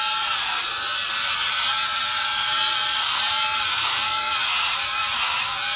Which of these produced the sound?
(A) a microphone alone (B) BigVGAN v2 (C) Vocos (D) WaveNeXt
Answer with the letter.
C